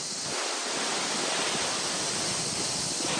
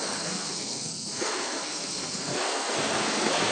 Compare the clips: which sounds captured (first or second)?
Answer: first